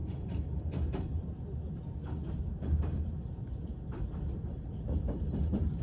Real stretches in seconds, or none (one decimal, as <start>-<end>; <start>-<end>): 0.0-2.4